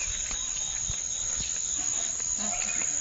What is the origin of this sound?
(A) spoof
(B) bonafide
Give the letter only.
B